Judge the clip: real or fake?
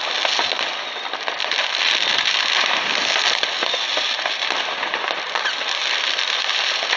real